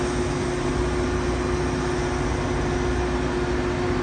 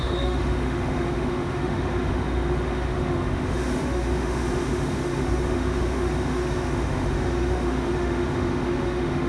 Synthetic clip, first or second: second